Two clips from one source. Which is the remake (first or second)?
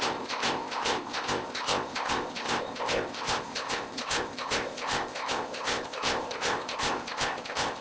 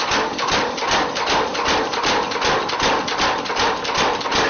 first